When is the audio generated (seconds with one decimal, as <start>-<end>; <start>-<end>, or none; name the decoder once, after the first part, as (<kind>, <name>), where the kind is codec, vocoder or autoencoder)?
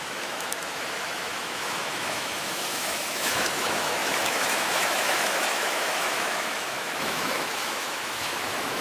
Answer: 0.0-8.8 (autoencoder, DAC-VAE)